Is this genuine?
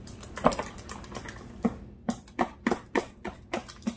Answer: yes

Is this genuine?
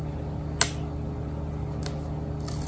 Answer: yes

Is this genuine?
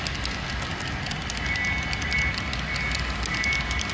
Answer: yes